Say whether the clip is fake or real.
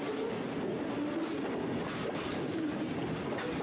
real